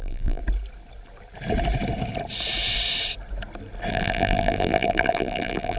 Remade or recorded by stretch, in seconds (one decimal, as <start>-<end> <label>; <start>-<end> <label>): 0.0-0.4 remade; 0.4-3.9 recorded; 3.9-5.8 remade